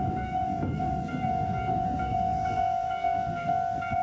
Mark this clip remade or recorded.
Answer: remade